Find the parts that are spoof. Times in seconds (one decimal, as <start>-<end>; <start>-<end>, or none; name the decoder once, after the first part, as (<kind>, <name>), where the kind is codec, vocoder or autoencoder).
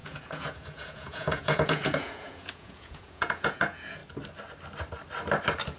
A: 0.0-4.0 (vocoder, Vocos)